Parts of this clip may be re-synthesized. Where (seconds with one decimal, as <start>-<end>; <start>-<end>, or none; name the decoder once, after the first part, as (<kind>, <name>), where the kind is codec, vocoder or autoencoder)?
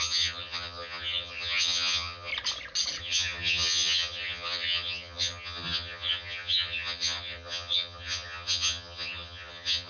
0.0-2.3 (vocoder, HiFi-GAN); 3.0-9.9